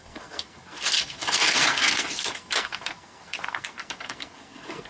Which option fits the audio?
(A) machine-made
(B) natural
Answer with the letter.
A